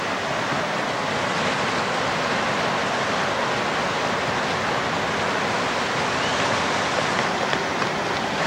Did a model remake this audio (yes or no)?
no